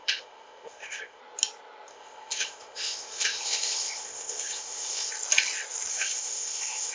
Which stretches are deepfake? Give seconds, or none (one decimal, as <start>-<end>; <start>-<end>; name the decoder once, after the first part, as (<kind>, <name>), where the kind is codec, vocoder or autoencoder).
0.0-1.2 (codec, ZipCodec); 1.9-5.1; 5.9-6.9